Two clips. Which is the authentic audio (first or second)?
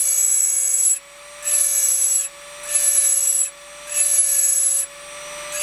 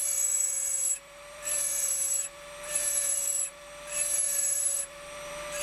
first